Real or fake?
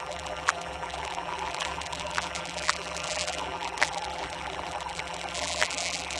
fake